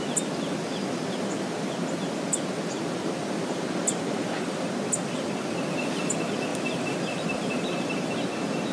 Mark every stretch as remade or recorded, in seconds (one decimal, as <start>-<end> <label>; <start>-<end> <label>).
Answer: 0.0-6.5 recorded; 6.5-7.6 remade; 7.6-8.7 recorded